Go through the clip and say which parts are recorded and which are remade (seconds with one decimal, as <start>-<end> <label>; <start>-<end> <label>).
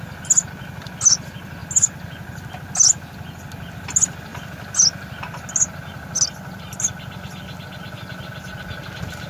0.0-9.3 recorded